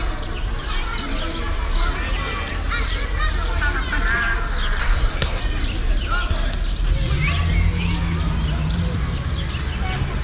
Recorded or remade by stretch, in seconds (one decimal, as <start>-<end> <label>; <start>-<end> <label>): 0.0-4.8 recorded; 4.8-5.4 remade; 5.4-10.2 recorded